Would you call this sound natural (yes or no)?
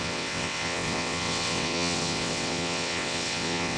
no